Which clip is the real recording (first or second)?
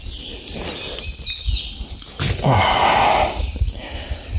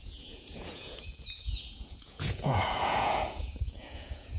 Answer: first